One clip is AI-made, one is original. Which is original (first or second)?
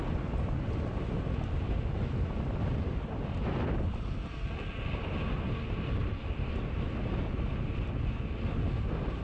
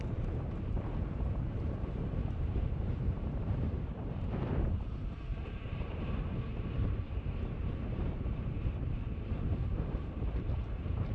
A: first